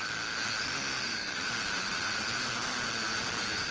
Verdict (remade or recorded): recorded